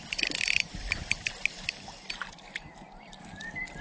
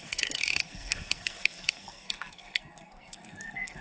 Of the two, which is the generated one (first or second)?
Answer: second